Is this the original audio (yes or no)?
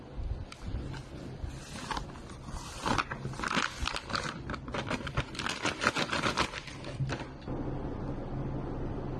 yes